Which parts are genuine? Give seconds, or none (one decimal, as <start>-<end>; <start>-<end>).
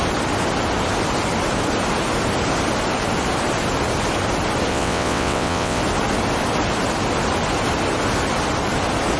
0.0-4.7; 5.8-9.2